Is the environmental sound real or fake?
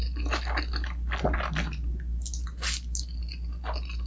real